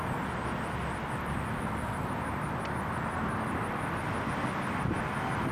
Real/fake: real